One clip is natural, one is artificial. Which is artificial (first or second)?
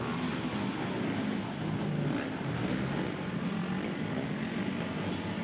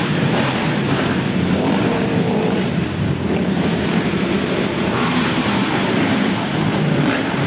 second